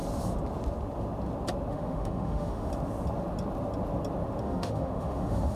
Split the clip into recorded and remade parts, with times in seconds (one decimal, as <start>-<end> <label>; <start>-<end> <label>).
0.0-1.7 recorded; 1.7-2.7 remade; 2.7-4.4 recorded; 4.4-5.6 remade